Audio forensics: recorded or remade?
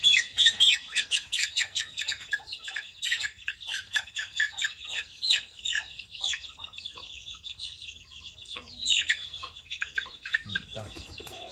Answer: remade